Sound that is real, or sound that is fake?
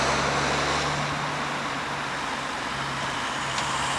real